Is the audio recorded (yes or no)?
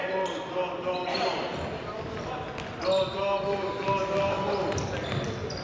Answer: yes